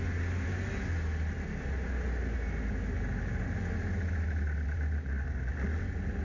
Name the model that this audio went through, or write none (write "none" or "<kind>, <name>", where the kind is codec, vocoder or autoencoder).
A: none